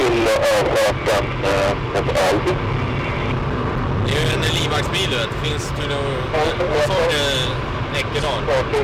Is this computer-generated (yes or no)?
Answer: no